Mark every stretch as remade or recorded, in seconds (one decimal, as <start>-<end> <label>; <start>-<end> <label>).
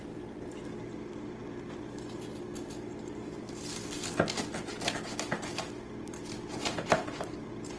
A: 0.0-7.8 recorded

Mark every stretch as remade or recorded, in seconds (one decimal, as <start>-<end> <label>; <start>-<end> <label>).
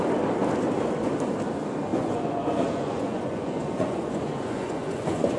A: 0.0-1.9 recorded; 1.9-5.4 remade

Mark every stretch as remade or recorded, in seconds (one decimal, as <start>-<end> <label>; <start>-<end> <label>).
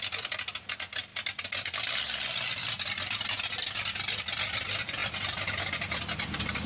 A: 0.0-6.7 recorded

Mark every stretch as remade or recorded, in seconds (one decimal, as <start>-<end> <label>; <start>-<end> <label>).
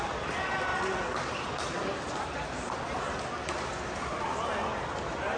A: 0.0-5.4 recorded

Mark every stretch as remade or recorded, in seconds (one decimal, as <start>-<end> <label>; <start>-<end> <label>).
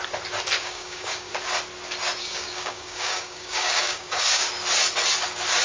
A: 0.0-0.6 recorded; 0.6-1.3 remade; 1.3-2.2 recorded; 2.2-4.5 remade; 4.5-5.6 recorded